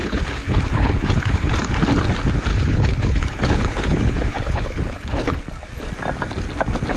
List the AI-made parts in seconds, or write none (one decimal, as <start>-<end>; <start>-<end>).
0.0-1.5; 2.5-5.3